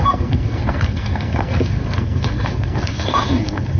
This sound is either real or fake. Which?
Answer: fake